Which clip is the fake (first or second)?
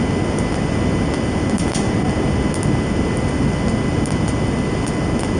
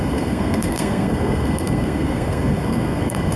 second